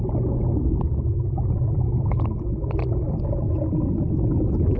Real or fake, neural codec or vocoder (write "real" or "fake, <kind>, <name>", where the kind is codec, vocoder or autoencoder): real